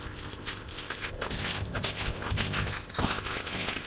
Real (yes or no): no